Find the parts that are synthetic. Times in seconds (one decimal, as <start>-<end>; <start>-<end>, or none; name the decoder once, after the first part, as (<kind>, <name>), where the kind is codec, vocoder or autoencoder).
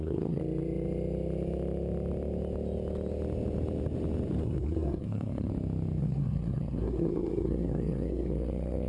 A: 0.0-0.4 (codec, SNAC); 4.4-5.5; 6.0-8.9